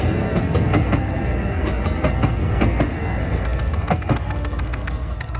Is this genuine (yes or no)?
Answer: no